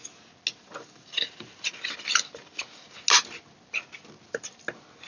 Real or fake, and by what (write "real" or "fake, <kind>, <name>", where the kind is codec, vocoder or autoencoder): real